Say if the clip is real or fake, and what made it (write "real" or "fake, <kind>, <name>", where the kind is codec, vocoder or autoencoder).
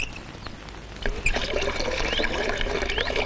real